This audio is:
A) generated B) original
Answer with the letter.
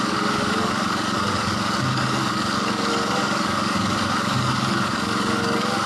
A